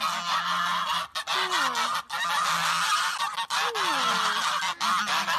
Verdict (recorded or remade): recorded